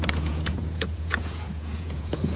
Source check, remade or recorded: remade